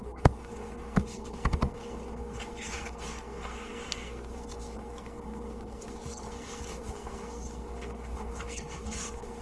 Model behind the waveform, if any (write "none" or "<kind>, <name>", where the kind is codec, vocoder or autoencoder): codec, SNAC